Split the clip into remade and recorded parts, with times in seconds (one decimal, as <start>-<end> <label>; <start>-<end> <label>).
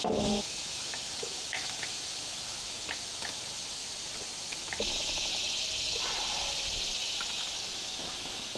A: 0.0-3.8 remade; 3.8-4.4 recorded; 4.4-5.3 remade; 5.3-7.3 recorded; 7.3-8.6 remade